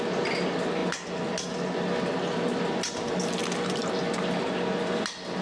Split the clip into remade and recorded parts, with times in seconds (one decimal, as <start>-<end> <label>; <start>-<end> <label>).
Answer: 0.0-5.4 recorded